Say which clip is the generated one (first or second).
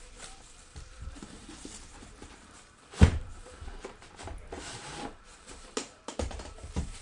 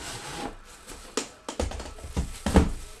first